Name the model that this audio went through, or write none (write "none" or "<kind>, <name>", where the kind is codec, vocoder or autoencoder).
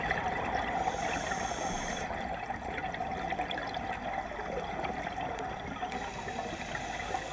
none